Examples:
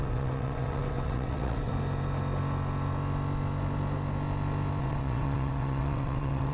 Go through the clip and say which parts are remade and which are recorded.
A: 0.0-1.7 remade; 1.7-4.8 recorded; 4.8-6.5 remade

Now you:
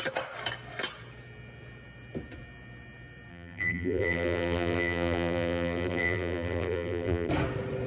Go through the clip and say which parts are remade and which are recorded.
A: 0.0-3.3 recorded; 3.3-7.3 remade; 7.3-7.9 recorded

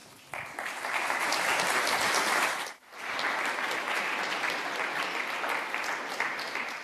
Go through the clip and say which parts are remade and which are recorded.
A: 0.0-6.8 recorded

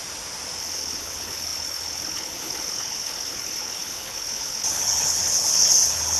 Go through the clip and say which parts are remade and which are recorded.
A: 0.0-0.6 recorded; 0.6-6.2 remade

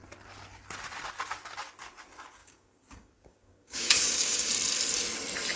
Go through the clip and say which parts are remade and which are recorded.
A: 0.0-2.4 recorded; 2.4-4.5 remade; 4.5-5.6 recorded

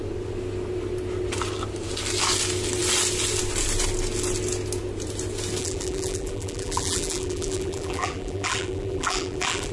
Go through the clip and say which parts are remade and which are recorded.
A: 0.0-5.6 recorded; 5.6-9.7 remade